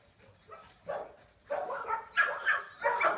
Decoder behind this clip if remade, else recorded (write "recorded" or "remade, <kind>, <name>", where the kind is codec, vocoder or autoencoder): recorded